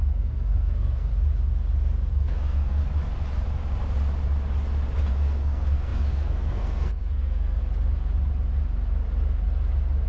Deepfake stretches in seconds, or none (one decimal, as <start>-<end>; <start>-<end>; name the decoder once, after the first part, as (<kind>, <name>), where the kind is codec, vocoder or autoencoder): 0.0-1.1 (codec, SNAC); 2.1-2.8; 5.1-7.6